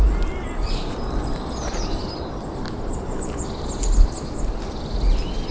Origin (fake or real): real